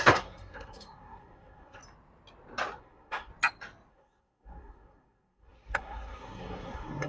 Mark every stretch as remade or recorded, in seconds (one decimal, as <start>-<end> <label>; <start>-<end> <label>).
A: 0.0-1.8 remade; 1.8-2.8 recorded; 2.8-3.3 remade; 3.3-3.9 recorded; 3.9-7.1 remade